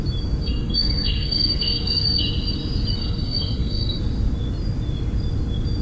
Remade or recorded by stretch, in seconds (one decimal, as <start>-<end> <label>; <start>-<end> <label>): 0.0-0.4 recorded; 0.4-2.2 remade; 2.2-3.0 recorded; 3.0-4.0 remade; 4.0-5.8 recorded